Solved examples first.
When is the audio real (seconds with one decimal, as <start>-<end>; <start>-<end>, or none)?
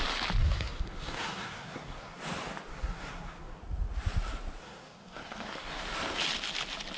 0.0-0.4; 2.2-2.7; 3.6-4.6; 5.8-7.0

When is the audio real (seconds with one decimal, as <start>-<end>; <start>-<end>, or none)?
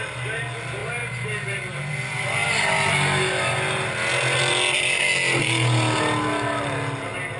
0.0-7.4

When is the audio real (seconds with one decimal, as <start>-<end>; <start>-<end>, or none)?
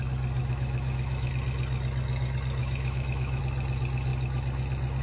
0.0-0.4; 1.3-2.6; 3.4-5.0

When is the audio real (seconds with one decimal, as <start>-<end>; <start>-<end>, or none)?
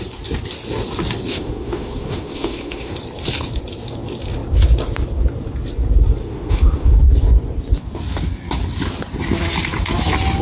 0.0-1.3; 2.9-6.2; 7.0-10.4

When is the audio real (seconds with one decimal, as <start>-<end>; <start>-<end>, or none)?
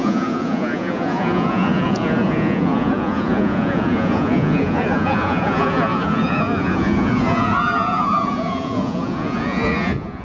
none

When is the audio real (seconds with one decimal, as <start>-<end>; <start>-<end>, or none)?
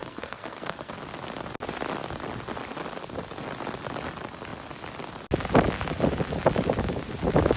0.9-7.6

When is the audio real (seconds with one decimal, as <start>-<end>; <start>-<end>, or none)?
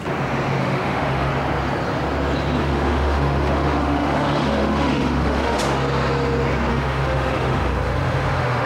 0.0-0.6; 1.3-2.6; 5.6-6.7